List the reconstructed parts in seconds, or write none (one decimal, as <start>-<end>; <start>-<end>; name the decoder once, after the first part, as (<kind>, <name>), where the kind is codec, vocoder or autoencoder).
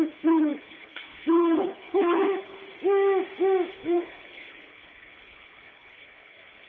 0.0-2.6 (codec, HILCodec); 3.7-6.7